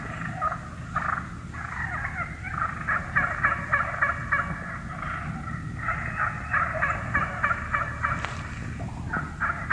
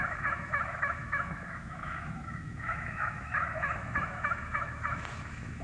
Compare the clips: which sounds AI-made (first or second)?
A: second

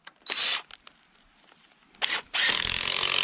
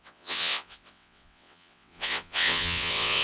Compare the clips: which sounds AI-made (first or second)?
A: second